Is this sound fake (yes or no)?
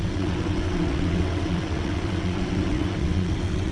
yes